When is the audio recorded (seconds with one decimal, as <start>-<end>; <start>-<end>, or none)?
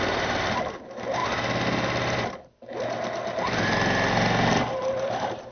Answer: 1.2-4.5